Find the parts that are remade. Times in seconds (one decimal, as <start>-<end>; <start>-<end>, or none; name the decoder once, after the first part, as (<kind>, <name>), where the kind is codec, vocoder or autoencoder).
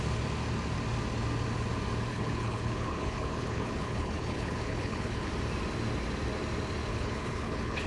2.1-5.3 (codec, HILCodec); 6.9-7.9